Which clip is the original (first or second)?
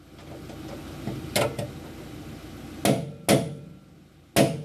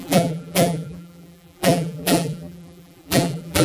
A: first